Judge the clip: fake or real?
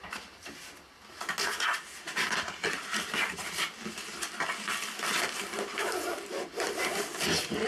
real